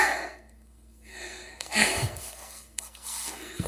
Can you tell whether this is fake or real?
fake